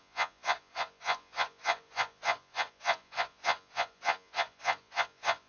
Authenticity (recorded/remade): remade